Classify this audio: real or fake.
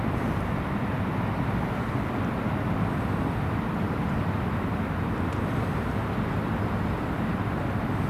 real